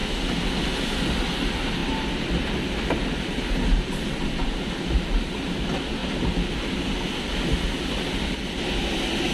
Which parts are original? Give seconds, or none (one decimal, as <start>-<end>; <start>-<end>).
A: 0.0-1.8; 2.7-6.0; 6.6-9.3